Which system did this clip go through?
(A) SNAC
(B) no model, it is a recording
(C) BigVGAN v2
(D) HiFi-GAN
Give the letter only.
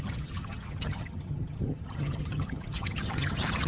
D